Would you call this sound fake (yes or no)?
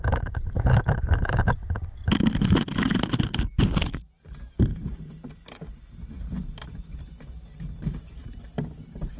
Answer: yes